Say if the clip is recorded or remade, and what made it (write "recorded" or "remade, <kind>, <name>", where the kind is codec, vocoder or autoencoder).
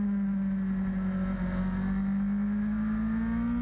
recorded